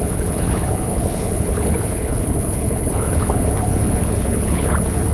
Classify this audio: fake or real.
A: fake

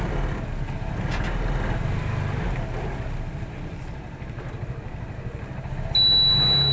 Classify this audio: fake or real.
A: real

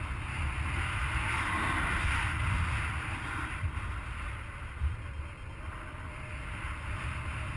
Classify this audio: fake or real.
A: real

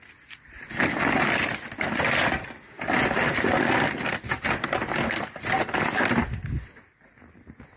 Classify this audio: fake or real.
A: real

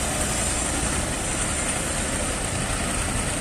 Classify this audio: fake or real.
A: real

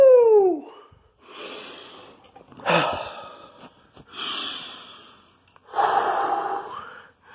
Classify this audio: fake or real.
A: real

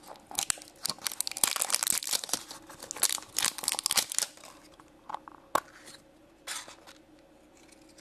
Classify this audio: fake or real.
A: real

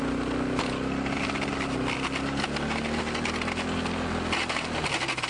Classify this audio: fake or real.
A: real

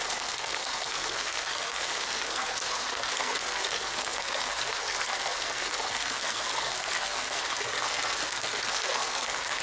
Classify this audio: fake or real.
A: fake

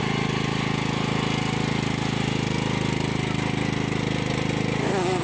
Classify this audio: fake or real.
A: real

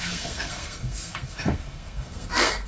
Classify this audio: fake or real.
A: fake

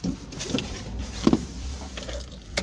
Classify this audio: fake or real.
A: fake